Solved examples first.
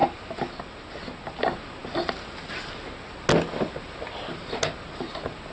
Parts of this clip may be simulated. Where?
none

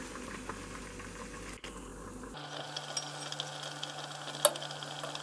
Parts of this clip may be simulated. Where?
none

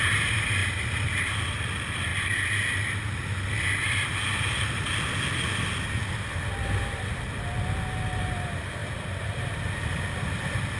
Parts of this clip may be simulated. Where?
0.6-1.6; 8.8-10.0

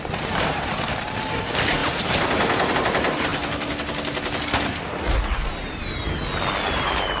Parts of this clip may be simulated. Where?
0.0-1.8; 2.7-3.3; 5.1-6.2; 6.7-7.2

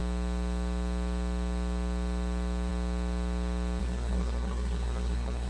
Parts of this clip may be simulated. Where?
3.8-5.5